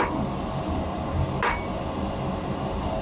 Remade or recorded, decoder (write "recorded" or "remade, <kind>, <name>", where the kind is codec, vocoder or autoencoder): recorded